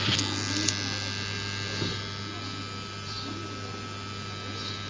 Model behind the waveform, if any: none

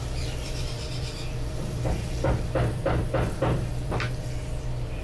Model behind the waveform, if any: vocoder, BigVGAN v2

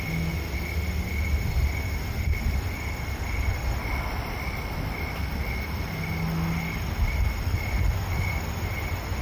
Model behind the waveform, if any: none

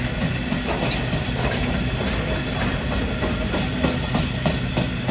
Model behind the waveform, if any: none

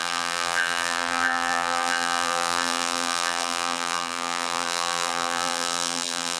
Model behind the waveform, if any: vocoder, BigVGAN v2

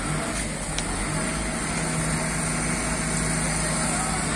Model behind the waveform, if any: none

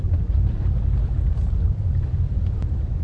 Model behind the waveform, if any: vocoder, BigVGAN v2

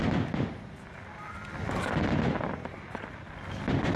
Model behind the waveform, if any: none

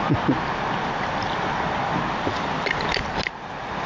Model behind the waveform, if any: none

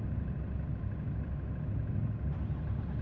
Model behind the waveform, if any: none